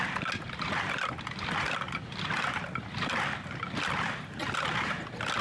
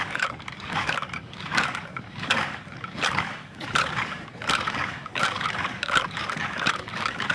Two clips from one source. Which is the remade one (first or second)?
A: second